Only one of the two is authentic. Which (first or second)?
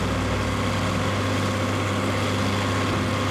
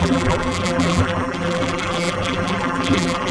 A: first